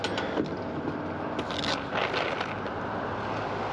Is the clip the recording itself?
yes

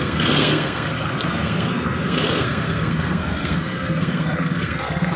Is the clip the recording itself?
no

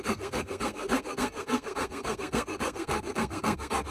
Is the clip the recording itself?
no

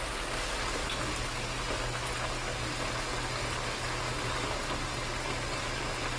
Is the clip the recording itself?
yes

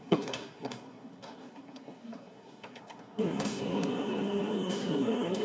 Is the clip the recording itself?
no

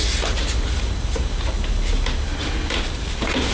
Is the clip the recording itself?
yes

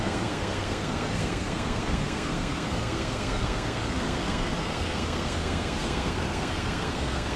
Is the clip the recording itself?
no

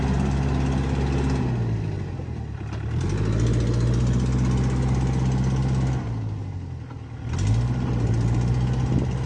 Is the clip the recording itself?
yes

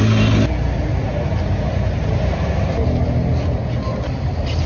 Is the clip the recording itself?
yes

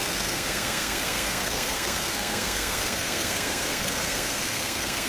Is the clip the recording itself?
no